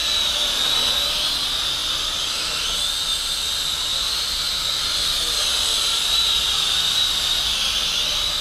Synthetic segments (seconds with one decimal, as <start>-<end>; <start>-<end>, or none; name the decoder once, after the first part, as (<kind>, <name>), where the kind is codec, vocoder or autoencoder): 1.8-2.4 (vocoder, BigVGAN v2); 3.9-6.7